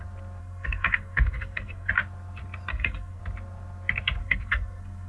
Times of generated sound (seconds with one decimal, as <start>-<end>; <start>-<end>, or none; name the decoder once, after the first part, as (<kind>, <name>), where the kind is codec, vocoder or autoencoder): 0.4-1.9 (codec, SNAC); 2.7-3.2; 4.2-5.1